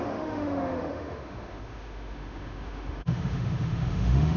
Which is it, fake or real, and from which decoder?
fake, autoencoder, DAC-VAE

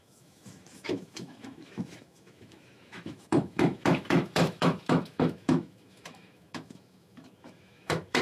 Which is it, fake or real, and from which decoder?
fake, autoencoder, DAC-VAE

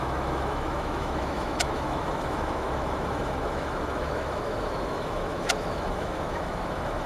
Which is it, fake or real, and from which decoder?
fake, autoencoder, DAC-VAE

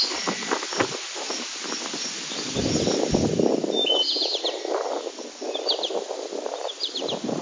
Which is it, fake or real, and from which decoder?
real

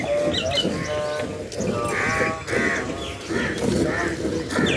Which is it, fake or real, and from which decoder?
real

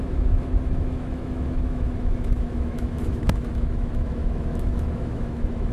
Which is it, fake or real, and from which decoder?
fake, autoencoder, DAC-VAE